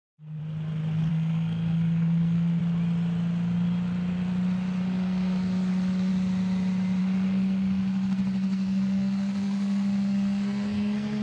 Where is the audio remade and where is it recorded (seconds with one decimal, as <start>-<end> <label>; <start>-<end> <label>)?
0.0-0.4 remade; 0.4-1.1 recorded; 1.1-2.6 remade; 2.6-4.8 recorded; 4.8-6.1 remade; 6.1-7.0 recorded; 7.0-11.2 remade